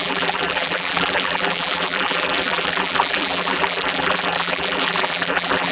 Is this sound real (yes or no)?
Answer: no